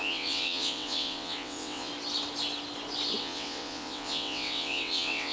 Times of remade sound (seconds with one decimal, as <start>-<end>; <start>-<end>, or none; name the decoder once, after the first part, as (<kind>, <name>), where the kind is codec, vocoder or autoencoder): 0.0-1.9 (vocoder, WaveNeXt); 3.2-5.3